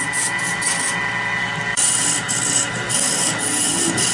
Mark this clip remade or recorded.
recorded